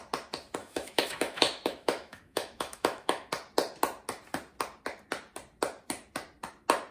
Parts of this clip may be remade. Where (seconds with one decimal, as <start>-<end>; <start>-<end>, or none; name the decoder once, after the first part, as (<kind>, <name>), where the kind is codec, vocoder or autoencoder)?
0.6-3.3 (autoencoder, DAC-VAE)